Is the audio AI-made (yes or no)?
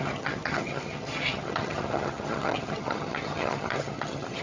yes